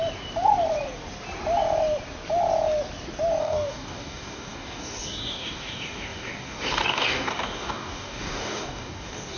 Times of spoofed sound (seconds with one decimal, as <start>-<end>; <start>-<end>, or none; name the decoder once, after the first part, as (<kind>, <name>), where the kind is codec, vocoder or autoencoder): 3.4-9.4 (codec, DAC)